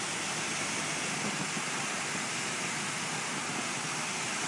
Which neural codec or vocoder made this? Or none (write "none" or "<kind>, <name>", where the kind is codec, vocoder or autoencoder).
none